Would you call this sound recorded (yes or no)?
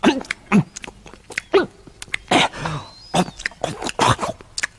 yes